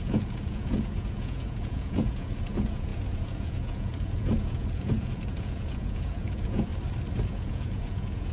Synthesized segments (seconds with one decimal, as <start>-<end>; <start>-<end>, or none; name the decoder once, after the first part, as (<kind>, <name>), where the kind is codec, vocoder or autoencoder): 0.0-6.7 (vocoder, Vocos); 7.2-8.3